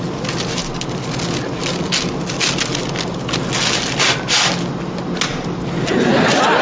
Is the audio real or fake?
real